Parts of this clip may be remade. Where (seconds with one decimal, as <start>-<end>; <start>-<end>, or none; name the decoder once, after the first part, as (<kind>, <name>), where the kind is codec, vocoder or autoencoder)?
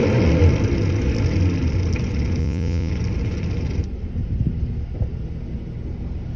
2.4-2.9 (vocoder, Vocos)